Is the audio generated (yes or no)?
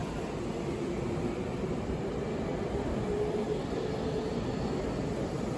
no